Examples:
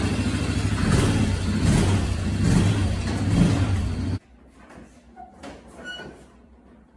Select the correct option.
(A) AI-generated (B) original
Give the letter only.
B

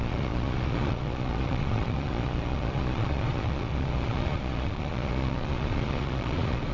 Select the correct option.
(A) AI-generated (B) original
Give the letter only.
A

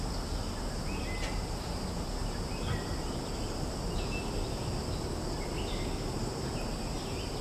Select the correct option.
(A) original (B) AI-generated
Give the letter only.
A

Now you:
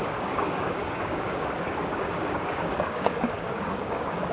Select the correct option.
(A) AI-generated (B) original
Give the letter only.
A